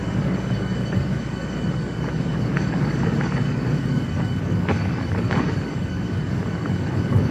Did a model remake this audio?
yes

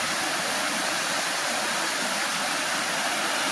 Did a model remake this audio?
no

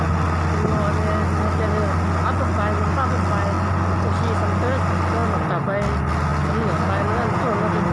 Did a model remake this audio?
no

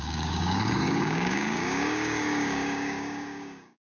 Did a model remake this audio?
yes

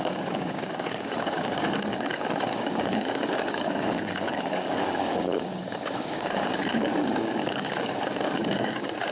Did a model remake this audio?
yes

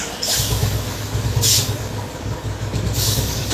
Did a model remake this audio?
yes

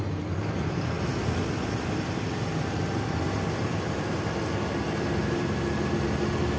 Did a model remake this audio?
no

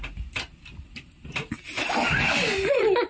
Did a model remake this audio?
no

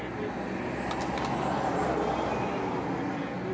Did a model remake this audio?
no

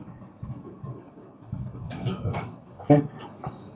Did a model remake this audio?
yes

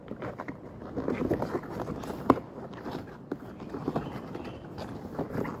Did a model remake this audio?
no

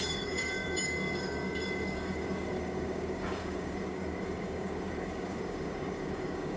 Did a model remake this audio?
yes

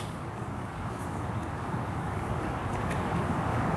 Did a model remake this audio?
yes